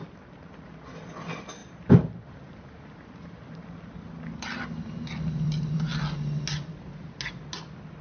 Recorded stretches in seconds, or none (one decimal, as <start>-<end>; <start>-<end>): 0.0-1.6; 3.8-8.0